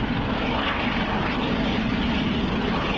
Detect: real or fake real